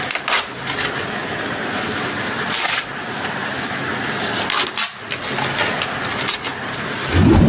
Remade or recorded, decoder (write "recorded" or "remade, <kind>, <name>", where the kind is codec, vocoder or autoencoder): recorded